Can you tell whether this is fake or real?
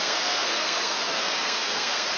fake